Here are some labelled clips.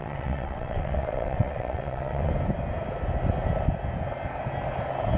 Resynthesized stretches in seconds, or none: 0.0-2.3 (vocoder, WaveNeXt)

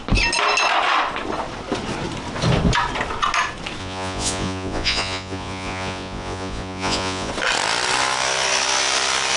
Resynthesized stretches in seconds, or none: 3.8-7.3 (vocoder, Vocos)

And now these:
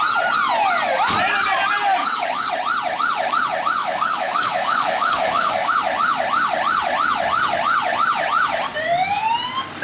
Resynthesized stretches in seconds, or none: 2.0-2.5 (codec, DAC); 3.8-5.7

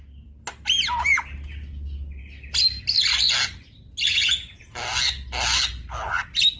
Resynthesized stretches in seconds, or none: 4.1-4.7 (vocoder, Vocos)

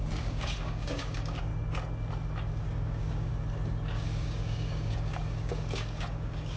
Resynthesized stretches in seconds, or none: 0.0-1.5 (codec, DAC); 2.6-3.3; 3.9-6.6